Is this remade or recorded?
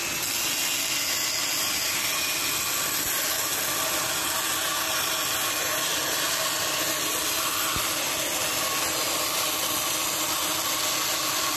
recorded